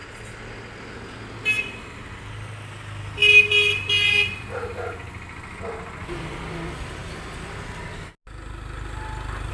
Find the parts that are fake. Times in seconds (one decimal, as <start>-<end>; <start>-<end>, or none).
none